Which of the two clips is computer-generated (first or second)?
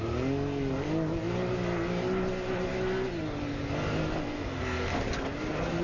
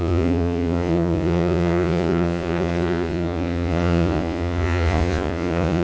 second